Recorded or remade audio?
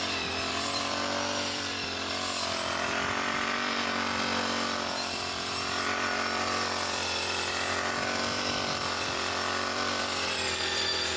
remade